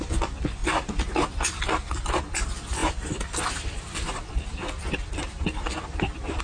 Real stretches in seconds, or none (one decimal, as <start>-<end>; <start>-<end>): 0.0-6.4